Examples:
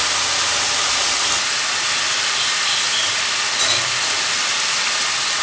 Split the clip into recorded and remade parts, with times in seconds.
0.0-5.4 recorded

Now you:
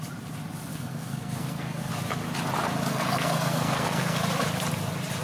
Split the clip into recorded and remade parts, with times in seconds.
0.0-0.7 recorded; 0.7-1.9 remade; 1.9-2.9 recorded; 2.9-4.2 remade; 4.2-5.2 recorded

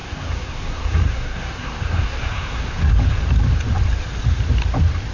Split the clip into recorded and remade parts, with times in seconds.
0.0-2.9 remade; 2.9-5.1 recorded

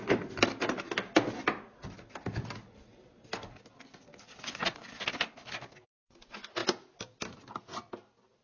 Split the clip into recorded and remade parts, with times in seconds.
0.0-8.4 recorded